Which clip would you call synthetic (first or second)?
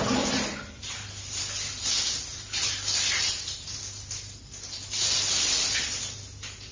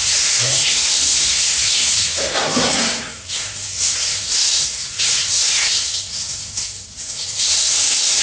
second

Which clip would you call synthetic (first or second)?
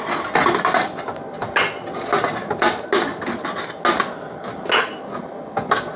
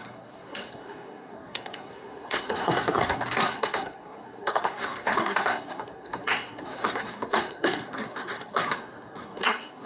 second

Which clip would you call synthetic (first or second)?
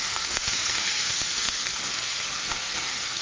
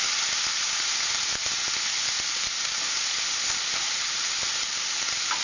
first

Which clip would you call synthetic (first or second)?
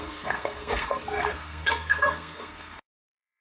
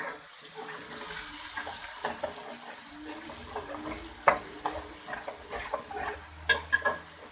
first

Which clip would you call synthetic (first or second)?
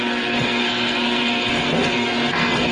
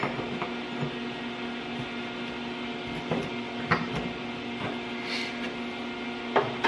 first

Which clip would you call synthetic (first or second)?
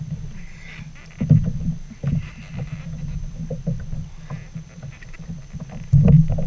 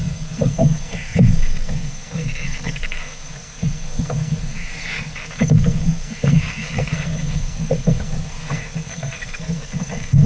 second